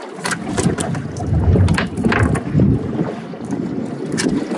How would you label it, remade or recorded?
recorded